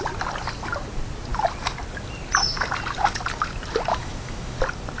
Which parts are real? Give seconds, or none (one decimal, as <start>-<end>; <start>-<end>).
0.0-3.9; 4.6-5.0